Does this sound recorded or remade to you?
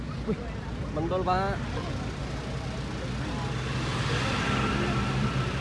recorded